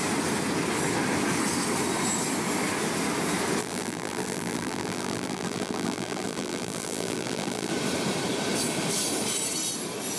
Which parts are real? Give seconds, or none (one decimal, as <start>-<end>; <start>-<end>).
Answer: 0.0-3.6; 7.7-10.2